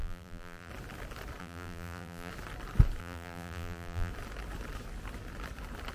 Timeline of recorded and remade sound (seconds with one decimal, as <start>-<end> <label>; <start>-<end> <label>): 0.0-0.7 remade; 0.7-1.4 recorded; 1.4-2.3 remade; 2.3-3.0 recorded; 3.0-4.1 remade; 4.1-5.9 recorded